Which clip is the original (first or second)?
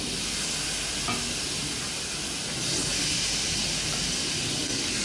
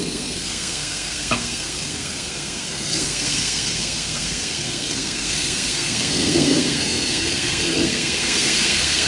first